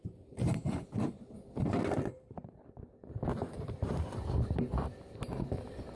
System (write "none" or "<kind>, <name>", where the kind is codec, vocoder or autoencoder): none